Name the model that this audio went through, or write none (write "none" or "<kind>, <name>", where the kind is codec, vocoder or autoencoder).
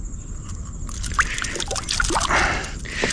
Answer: none